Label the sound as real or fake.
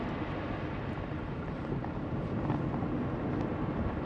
real